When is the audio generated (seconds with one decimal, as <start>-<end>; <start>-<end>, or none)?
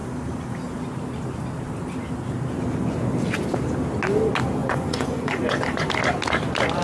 4.6-5.9